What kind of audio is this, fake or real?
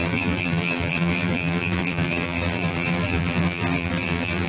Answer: fake